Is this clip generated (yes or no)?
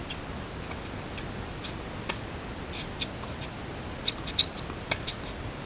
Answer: no